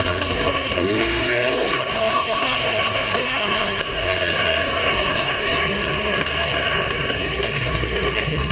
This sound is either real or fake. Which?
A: fake